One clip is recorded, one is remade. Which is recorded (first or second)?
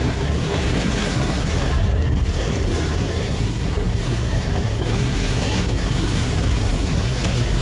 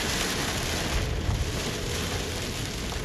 second